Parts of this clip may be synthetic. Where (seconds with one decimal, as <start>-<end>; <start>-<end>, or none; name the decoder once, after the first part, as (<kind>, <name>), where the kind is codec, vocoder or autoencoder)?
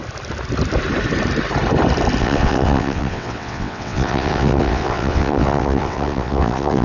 2.2-6.8 (vocoder, WaveNeXt)